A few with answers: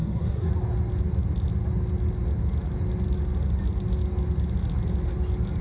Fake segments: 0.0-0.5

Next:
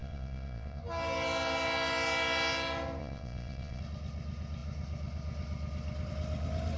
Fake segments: 0.0-0.8; 3.0-3.8

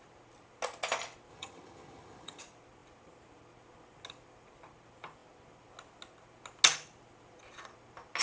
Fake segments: 1.3-2.4

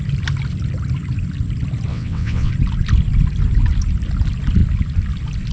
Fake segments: 1.9-2.5